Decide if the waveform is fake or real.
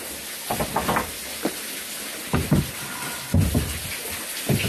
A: real